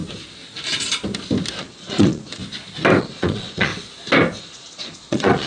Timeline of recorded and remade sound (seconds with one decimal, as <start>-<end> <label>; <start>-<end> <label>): 0.0-1.6 recorded; 1.6-2.4 remade; 2.4-3.0 recorded; 3.0-3.7 remade; 3.7-4.4 recorded; 4.4-5.5 remade

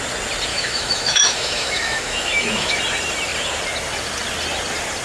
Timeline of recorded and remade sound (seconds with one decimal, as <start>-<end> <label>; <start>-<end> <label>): 0.0-0.5 recorded; 0.5-2.8 remade; 2.8-5.0 recorded

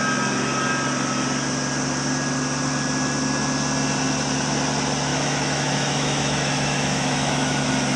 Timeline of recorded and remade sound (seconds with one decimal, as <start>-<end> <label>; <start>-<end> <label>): 0.0-5.1 recorded; 5.1-7.6 remade; 7.6-8.0 recorded

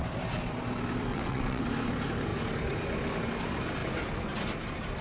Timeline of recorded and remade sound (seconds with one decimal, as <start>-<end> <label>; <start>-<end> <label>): 0.0-1.1 recorded; 1.1-1.6 remade; 1.6-5.0 recorded

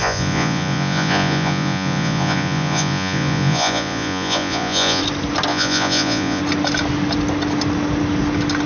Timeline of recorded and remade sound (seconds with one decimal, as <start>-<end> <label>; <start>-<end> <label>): 0.0-5.0 remade; 5.0-5.5 recorded; 5.5-6.4 remade; 6.4-8.7 recorded